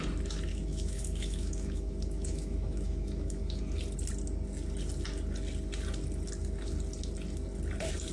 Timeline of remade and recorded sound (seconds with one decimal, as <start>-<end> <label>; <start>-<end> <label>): 0.0-0.5 recorded; 0.5-3.6 remade; 3.6-8.1 recorded